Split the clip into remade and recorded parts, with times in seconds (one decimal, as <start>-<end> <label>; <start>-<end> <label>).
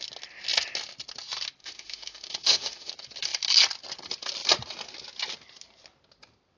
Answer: 0.0-1.6 recorded; 1.6-2.9 remade; 2.9-6.6 recorded